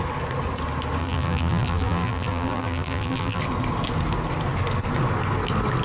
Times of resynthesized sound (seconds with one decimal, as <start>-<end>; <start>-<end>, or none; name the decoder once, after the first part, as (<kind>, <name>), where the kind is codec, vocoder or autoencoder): 1.0-3.4 (vocoder, BigVGAN v2)